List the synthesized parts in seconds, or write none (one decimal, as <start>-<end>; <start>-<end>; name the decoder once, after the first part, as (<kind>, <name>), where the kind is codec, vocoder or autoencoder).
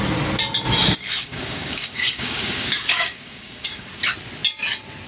0.8-3.9 (codec, DAC)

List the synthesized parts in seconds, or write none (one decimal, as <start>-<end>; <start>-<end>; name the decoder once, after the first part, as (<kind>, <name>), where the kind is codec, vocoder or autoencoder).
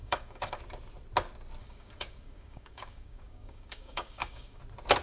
0.0-0.6 (codec, DAC); 1.6-4.6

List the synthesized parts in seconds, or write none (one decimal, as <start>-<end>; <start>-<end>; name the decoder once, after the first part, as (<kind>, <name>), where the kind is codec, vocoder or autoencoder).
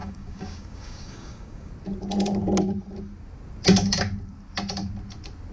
0.0-1.7 (codec, DAC)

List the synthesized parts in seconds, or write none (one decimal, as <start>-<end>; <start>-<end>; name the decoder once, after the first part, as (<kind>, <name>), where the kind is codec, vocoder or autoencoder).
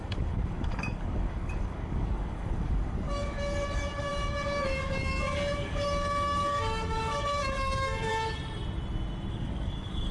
0.0-8.1 (codec, DAC); 9.3-10.1